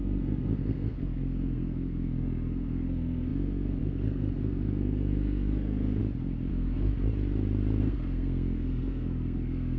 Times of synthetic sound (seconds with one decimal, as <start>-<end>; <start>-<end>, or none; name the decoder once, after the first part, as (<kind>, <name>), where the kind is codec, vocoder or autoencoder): 0.0-6.0 (codec, SNAC); 6.5-6.9; 7.8-9.8